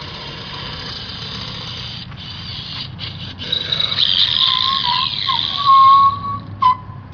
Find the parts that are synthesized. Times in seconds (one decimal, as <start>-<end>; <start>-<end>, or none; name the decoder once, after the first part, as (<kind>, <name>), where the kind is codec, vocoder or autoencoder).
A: 0.0-0.6 (vocoder, Vocos)